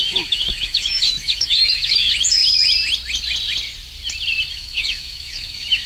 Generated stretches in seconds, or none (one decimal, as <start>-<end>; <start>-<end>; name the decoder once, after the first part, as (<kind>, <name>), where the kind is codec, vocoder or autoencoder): 0.0-2.4 (autoencoder, DAC-VAE); 4.5-5.9